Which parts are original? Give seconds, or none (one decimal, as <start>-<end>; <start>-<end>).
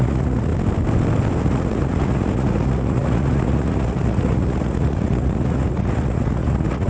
0.5-1.4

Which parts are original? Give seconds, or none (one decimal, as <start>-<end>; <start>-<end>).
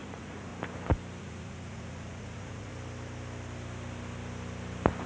0.5-1.2; 2.7-5.1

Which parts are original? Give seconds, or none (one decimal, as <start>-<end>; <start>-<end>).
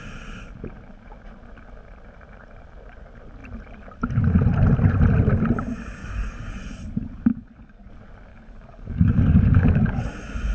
0.0-6.0; 6.5-7.3; 7.9-8.3; 10.0-10.5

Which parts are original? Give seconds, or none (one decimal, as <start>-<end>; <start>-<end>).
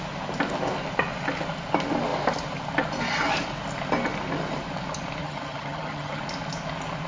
0.0-5.2; 6.2-7.1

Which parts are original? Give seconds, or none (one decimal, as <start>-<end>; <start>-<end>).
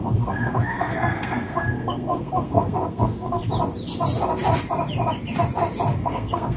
3.5-5.9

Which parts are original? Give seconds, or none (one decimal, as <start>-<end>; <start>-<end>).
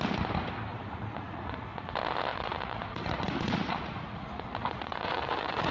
0.0-0.7; 1.9-2.3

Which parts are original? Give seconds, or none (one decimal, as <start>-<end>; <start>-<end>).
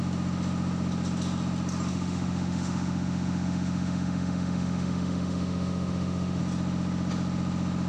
0.0-1.9; 6.4-7.9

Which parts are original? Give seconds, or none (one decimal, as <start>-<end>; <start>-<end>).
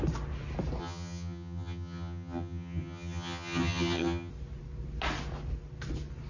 0.0-0.8; 4.3-6.3